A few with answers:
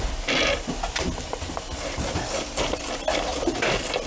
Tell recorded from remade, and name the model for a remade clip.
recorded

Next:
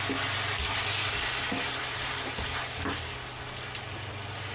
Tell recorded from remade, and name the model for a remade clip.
recorded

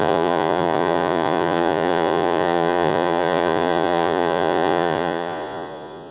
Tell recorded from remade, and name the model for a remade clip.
remade, vocoder, Vocos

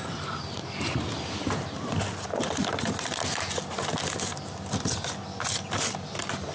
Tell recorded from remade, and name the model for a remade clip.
recorded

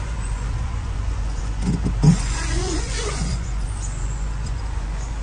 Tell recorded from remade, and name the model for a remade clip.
remade, vocoder, Vocos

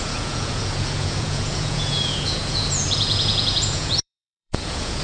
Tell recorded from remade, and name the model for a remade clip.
remade, vocoder, Vocos